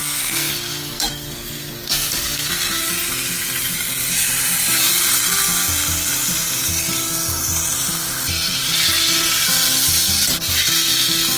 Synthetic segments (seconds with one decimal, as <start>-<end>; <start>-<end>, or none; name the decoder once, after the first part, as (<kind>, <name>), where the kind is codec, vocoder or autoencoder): 0.0-2.9 (codec, SNAC)